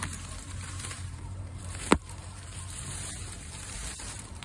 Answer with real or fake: fake